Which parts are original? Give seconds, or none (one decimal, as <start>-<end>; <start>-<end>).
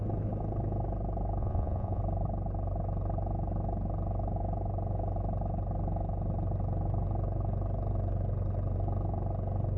0.0-1.4; 2.0-9.8